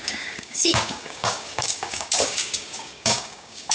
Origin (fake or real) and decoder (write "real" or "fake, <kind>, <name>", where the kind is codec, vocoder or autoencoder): fake, codec, DAC